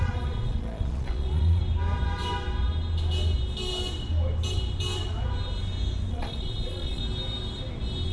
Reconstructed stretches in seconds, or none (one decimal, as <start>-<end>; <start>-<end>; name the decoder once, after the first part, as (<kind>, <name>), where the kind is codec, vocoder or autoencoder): 0.0-1.6 (vocoder, Vocos); 6.1-7.0